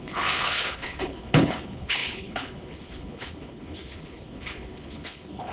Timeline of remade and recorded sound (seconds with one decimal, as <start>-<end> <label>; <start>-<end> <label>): 0.0-5.5 remade